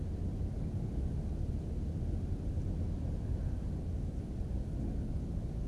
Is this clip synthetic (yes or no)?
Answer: no